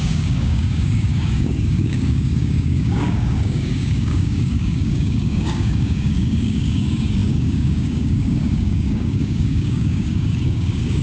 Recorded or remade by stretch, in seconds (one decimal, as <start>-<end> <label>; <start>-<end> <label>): 0.0-11.0 remade